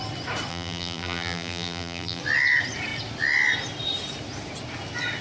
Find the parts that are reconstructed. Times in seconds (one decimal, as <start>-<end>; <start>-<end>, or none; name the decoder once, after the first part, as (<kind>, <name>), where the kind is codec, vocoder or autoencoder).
0.5-2.2 (vocoder, BigVGAN v2)

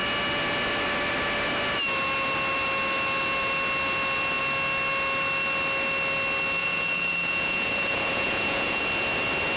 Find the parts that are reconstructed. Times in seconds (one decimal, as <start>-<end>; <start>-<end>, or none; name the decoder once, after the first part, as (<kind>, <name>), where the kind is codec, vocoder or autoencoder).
6.6-8.8 (vocoder, Vocos)

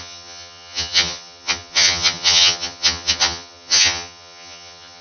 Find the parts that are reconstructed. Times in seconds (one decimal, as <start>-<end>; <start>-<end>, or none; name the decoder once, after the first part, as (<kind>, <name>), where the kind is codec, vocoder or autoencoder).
0.0-5.0 (vocoder, HiFi-GAN)

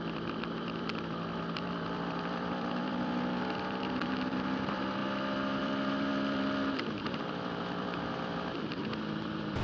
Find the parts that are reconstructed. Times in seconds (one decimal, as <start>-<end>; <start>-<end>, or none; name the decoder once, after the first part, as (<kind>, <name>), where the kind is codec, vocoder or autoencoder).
0.0-5.0 (vocoder, BigVGAN v2); 5.6-9.6

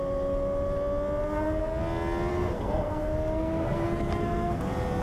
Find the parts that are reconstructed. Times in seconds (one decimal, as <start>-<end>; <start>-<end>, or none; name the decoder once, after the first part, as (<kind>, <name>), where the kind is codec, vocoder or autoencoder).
2.3-4.6 (codec, SNAC)

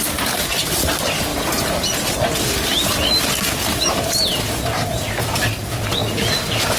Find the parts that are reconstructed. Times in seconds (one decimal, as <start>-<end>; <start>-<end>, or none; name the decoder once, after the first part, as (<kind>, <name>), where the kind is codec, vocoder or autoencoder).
0.0-1.3 (vocoder, BigVGAN v2); 3.9-6.0

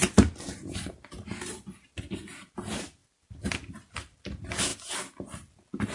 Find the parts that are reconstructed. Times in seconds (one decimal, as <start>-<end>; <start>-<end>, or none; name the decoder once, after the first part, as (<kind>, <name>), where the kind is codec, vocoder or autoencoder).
0.0-2.4 (vocoder, BigVGAN v2); 3.0-3.7; 4.7-5.5

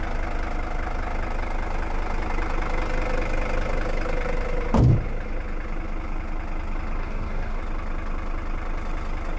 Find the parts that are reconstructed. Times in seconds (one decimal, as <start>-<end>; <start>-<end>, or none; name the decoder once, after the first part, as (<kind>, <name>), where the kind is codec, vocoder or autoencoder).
7.0-7.6 (codec, DAC)